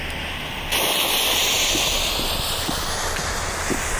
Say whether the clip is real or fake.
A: real